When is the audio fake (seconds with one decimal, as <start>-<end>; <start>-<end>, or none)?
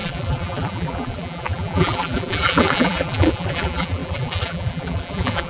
0.0-5.5